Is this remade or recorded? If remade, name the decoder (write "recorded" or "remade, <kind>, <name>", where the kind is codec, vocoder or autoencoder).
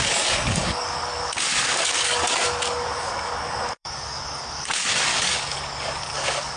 remade, codec, DAC